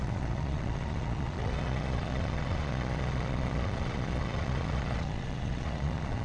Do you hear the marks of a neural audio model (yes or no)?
yes